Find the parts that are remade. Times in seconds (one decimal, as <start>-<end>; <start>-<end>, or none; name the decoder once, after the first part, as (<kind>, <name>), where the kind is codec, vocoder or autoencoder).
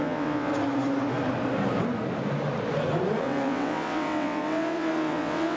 0.0-0.5 (vocoder, WaveNeXt); 3.2-5.6